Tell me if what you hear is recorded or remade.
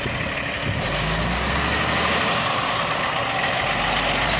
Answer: recorded